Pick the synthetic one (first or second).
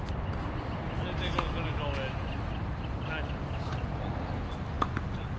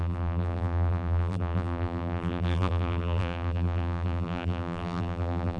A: second